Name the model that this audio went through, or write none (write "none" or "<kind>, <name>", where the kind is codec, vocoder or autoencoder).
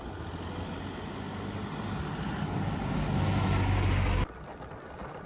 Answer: none